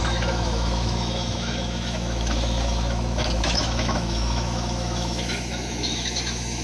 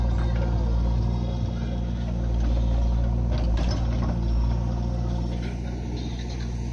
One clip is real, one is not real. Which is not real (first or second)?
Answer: first